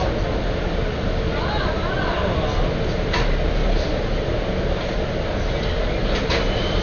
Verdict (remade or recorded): recorded